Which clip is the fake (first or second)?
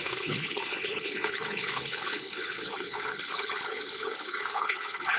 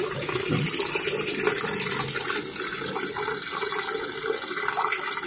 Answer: first